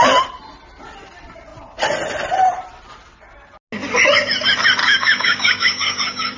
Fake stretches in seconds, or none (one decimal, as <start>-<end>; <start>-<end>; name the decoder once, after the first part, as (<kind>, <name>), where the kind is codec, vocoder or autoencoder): 4.8-6.4 (codec, DAC)

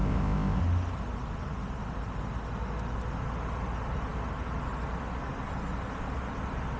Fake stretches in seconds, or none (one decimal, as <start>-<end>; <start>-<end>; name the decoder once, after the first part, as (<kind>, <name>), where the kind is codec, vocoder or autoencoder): 0.0-0.6 (codec, ZipCodec)